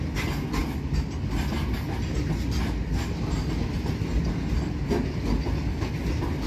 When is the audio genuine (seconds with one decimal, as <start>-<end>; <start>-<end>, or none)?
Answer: 0.0-6.5